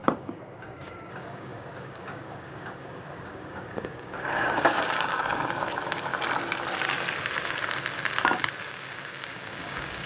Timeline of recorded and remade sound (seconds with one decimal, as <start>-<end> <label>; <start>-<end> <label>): 0.0-6.1 remade; 6.1-8.7 recorded; 8.7-10.1 remade

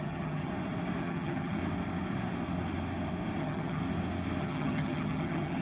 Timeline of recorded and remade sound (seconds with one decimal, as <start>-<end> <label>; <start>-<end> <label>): 0.0-0.5 remade; 0.5-1.0 recorded; 1.0-1.6 remade; 1.6-3.4 recorded; 3.4-3.8 remade; 3.8-4.4 recorded; 4.4-5.6 remade

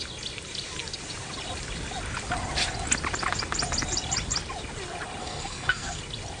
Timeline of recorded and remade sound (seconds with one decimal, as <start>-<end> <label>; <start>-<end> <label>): 0.0-5.2 recorded; 5.2-6.0 remade; 6.0-6.4 recorded

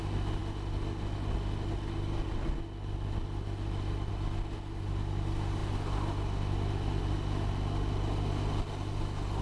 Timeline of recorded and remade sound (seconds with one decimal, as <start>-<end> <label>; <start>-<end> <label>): 0.0-9.4 recorded

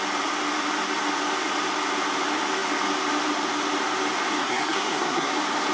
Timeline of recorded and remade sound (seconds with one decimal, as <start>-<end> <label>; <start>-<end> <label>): 0.0-4.4 recorded; 4.4-5.3 remade; 5.3-5.7 recorded

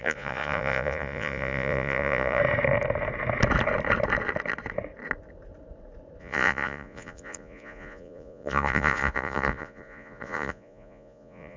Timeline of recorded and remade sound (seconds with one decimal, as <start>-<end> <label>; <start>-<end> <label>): 0.0-2.4 remade; 2.4-6.2 recorded; 6.2-11.6 remade

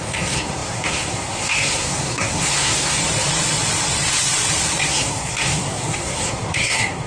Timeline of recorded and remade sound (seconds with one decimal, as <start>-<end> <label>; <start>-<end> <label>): 0.0-3.0 remade; 3.0-4.9 recorded; 4.9-7.1 remade